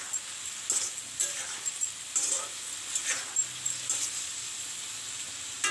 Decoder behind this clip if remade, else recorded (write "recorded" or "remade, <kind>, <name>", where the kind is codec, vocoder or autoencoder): recorded